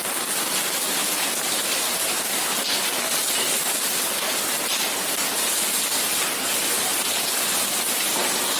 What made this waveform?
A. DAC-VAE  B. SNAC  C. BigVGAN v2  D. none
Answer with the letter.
D